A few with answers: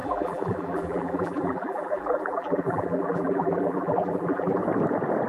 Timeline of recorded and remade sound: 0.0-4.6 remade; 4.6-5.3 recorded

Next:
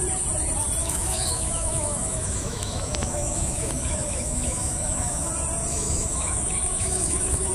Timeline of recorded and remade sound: 0.0-0.8 recorded; 0.8-5.3 remade; 5.3-5.7 recorded; 5.7-7.5 remade

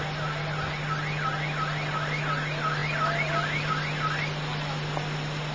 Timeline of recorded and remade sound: 0.0-5.5 recorded

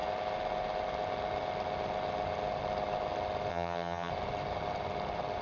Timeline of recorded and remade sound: 0.0-3.5 recorded; 3.5-4.1 remade; 4.1-5.4 recorded

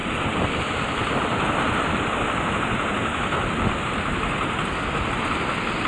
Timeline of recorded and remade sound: 0.0-2.1 remade; 2.1-5.9 recorded

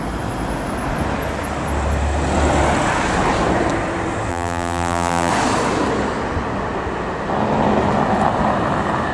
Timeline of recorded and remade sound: 0.0-4.3 recorded; 4.3-5.3 remade; 5.3-9.1 recorded

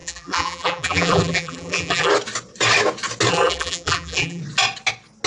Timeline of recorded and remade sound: 0.0-2.1 remade; 2.1-3.3 recorded; 3.3-4.4 remade; 4.4-5.3 recorded

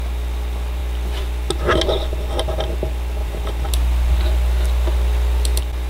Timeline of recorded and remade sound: 0.0-3.2 recorded; 3.2-3.7 remade; 3.7-5.9 recorded